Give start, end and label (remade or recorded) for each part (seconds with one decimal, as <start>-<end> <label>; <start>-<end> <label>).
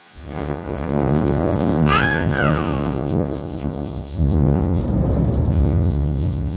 0.0-4.8 remade; 4.8-5.5 recorded; 5.5-6.6 remade